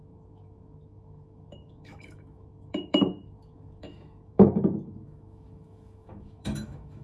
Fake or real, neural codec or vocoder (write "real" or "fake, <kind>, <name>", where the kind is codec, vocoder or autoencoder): fake, autoencoder, DAC-VAE